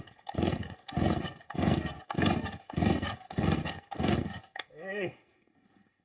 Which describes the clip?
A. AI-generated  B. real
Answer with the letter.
A